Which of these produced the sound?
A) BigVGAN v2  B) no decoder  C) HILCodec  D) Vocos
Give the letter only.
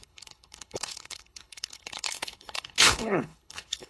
C